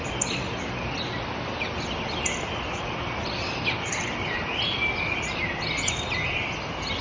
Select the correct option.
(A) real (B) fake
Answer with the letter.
A